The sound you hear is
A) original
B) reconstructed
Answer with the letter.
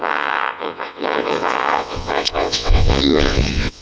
B